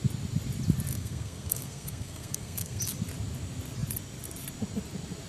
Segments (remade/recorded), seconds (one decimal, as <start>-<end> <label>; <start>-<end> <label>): 0.0-0.9 recorded; 0.9-2.8 remade; 2.8-5.3 recorded